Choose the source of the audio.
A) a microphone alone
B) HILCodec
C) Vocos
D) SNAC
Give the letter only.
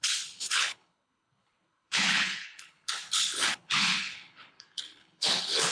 B